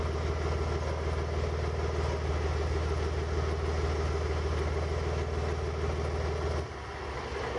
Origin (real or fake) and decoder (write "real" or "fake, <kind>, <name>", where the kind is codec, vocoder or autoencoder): real